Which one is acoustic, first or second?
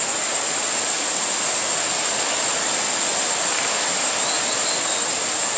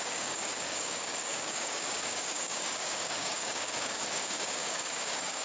first